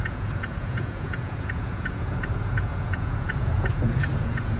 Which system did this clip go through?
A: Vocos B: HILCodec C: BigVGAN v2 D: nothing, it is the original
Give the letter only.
A